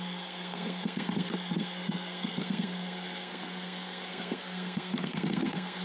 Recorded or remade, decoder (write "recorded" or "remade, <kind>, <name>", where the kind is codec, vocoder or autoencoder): remade, codec, SNAC